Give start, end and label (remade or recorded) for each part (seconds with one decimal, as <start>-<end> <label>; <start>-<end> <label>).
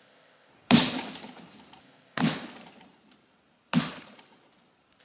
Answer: 0.0-0.5 remade; 0.5-1.8 recorded; 1.8-2.2 remade; 2.2-5.0 recorded